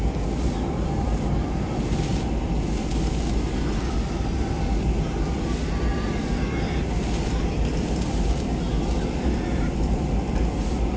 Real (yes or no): yes